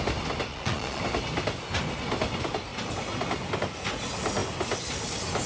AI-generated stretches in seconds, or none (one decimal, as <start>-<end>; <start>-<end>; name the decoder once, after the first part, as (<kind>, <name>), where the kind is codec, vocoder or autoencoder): 0.5-1.0 (vocoder, Vocos)